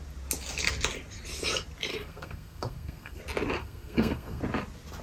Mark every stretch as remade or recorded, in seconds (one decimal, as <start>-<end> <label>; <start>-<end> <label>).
0.0-1.9 recorded; 1.9-3.2 remade; 3.2-3.6 recorded; 3.6-4.4 remade; 4.4-5.0 recorded